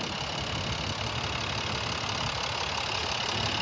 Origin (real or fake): real